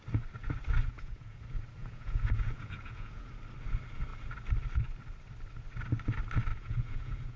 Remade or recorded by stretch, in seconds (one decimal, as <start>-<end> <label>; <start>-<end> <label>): 0.0-0.9 recorded; 0.9-1.4 remade; 1.4-1.8 recorded; 1.8-3.4 remade; 3.4-6.5 recorded; 6.5-7.4 remade